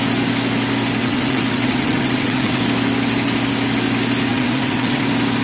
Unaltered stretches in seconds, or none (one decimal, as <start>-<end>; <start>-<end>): 0.0-1.0; 2.6-4.3; 5.0-5.4